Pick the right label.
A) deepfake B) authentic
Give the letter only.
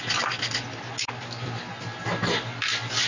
B